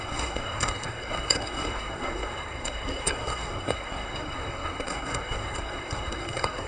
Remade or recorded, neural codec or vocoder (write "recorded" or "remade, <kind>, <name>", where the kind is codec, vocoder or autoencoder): remade, codec, SNAC